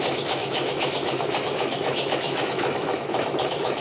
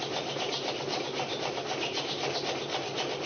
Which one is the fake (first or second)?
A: first